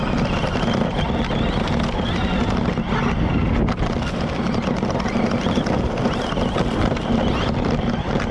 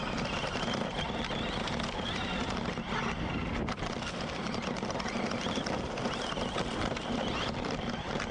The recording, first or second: first